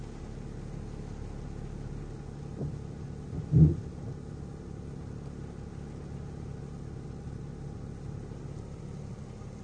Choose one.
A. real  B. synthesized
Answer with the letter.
A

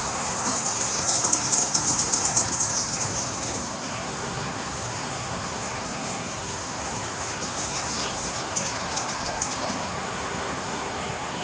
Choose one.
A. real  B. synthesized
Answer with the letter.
B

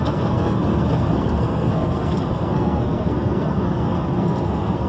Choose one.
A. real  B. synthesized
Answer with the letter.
B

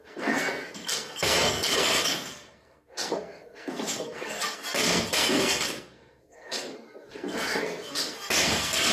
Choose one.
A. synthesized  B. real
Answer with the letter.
A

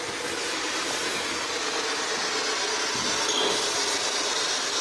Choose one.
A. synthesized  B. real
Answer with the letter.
B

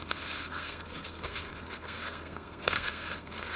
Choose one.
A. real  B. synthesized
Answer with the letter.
B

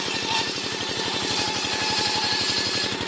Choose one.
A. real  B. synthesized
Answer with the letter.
A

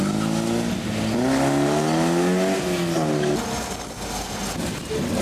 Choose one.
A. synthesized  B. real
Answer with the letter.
B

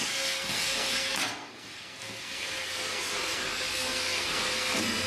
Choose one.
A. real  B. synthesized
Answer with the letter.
B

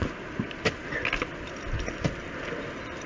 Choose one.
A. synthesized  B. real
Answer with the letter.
B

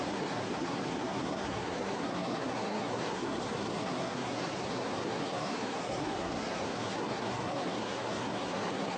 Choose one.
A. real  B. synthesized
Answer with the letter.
B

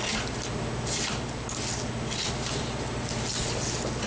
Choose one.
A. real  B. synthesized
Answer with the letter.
A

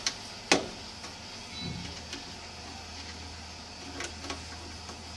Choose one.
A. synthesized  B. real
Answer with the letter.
B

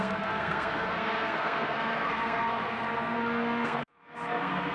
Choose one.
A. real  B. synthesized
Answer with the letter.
B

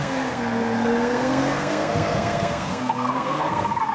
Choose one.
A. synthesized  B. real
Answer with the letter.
A